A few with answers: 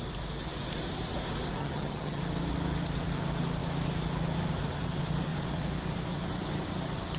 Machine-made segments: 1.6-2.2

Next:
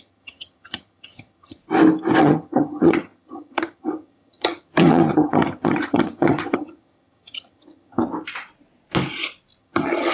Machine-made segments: 0.0-1.6; 2.2-8.0; 9.6-10.1

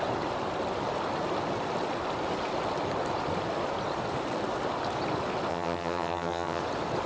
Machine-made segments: 5.5-6.6

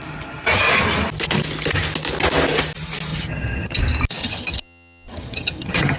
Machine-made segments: 3.1-3.8; 4.2-6.0

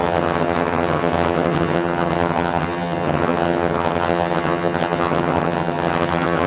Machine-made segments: 0.0-6.5